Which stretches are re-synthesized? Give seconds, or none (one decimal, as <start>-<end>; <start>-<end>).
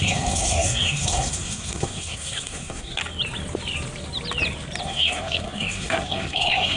0.0-3.0; 4.8-6.8